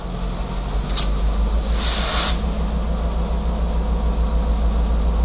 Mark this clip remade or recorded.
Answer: recorded